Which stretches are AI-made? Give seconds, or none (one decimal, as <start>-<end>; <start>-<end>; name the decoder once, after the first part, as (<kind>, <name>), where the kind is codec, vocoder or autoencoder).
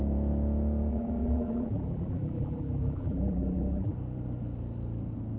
0.9-3.9 (vocoder, BigVGAN v2)